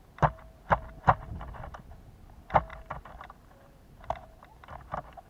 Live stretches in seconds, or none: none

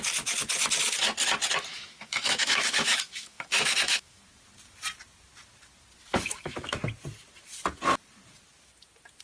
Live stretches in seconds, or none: 0.0-1.7; 4.2-6.1; 6.8-9.2

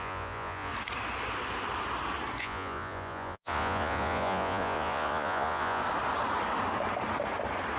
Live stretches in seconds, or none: 0.7-2.4; 5.8-7.8